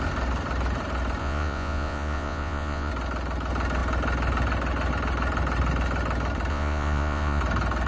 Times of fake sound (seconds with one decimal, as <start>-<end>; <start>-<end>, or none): 1.2-2.9; 6.5-7.4